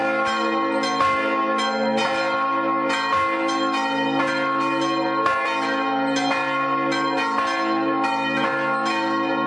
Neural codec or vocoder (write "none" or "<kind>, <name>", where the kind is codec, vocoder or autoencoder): none